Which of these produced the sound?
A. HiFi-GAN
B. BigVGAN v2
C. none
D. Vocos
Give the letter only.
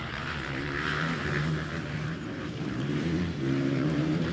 B